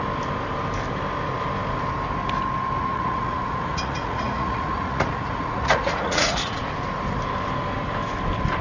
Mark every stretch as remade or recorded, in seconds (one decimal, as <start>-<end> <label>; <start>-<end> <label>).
0.0-2.8 recorded; 2.8-6.6 remade; 6.6-8.6 recorded